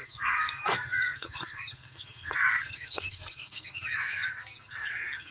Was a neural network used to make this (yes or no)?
yes